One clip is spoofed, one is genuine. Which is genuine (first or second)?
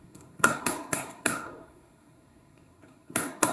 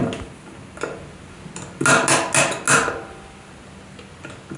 second